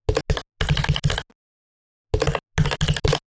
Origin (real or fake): real